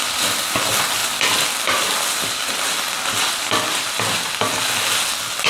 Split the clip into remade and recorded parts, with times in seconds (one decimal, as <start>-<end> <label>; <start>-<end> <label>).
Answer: 0.0-5.5 recorded